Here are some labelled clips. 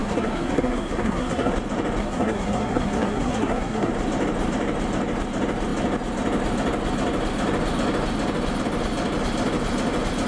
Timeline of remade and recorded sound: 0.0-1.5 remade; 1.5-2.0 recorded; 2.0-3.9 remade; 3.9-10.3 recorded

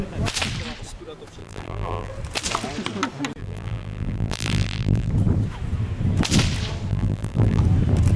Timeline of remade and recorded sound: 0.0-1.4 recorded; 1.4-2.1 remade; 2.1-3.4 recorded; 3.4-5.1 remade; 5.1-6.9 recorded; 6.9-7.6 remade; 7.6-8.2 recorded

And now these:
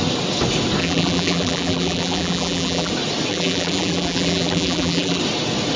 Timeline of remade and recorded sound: 0.0-0.8 recorded; 0.8-2.9 remade; 2.9-3.3 recorded; 3.3-5.2 remade; 5.2-5.8 recorded